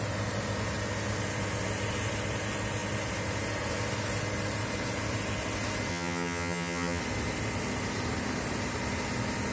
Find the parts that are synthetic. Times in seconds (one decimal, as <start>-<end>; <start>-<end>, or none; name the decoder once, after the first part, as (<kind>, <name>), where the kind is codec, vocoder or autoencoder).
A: 5.9-7.0 (vocoder, HiFi-GAN)